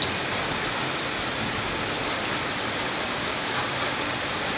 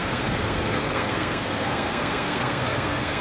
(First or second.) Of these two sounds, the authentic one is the first